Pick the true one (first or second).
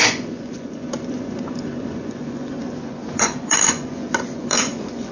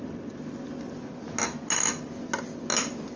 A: second